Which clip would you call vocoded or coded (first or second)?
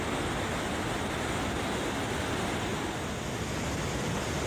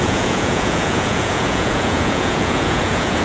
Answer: second